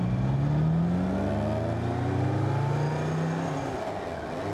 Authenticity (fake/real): real